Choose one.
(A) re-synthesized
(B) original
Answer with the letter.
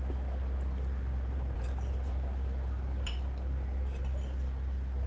B